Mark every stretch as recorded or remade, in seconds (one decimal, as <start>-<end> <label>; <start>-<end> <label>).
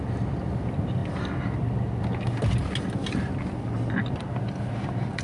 0.0-5.2 recorded